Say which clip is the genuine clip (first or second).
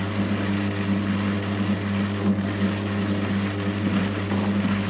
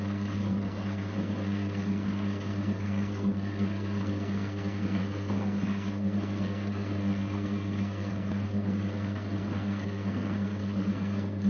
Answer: first